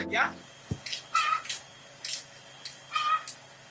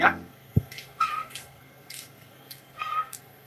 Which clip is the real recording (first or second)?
first